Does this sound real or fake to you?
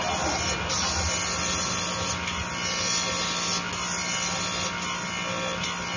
real